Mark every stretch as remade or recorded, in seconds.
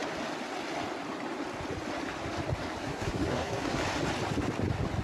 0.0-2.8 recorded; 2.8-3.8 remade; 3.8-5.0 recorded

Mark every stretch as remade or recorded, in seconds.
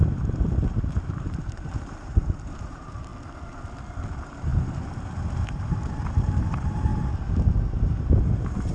0.0-3.1 remade; 3.1-4.1 recorded; 4.1-6.9 remade; 6.9-7.7 recorded; 7.7-8.7 remade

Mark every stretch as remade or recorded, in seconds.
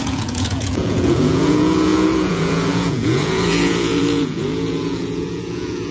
0.0-5.9 remade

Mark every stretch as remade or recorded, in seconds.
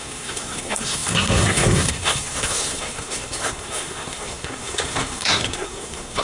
0.0-6.2 remade